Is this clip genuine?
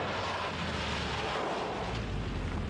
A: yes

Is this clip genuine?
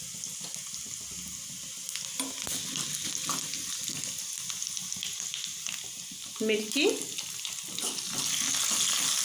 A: yes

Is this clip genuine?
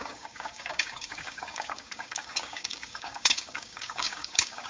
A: no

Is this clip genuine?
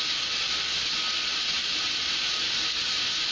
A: yes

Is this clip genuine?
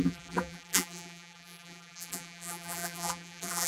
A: no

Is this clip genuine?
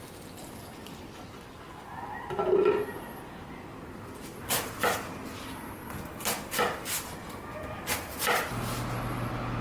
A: yes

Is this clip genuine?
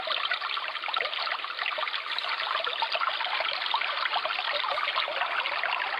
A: yes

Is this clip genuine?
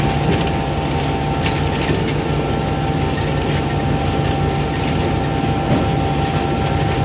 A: yes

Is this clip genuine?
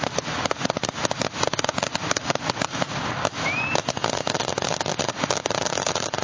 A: yes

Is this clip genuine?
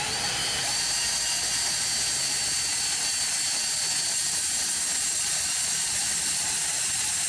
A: yes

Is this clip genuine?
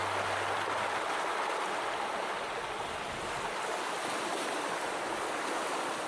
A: yes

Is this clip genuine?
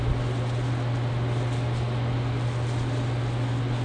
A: yes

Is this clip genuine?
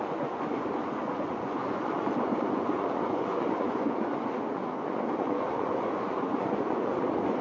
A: no